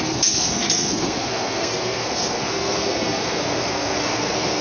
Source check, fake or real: fake